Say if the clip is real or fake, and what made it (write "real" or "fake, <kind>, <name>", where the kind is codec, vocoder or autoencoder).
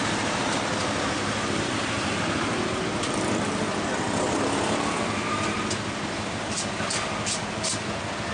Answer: real